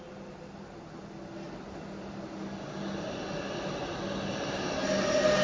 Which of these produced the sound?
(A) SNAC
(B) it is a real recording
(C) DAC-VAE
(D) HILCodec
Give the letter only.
B